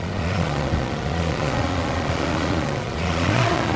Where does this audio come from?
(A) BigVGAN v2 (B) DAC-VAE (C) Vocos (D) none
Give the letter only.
C